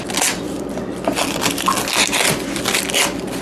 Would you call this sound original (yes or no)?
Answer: yes